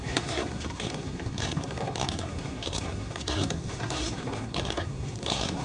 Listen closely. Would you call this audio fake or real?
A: fake